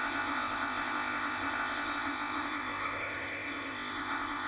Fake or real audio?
fake